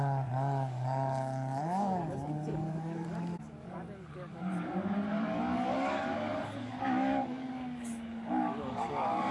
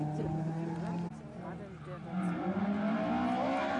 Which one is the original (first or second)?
second